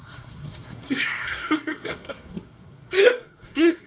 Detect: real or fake fake